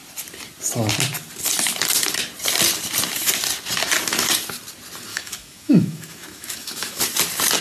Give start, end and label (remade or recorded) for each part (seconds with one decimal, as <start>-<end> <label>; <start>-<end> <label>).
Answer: 0.0-5.1 recorded; 5.1-7.0 remade; 7.0-7.6 recorded